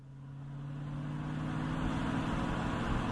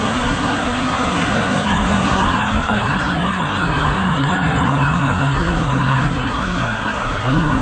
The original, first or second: first